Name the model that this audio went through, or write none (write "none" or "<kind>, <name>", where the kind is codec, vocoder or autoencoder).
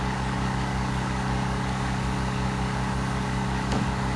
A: codec, DAC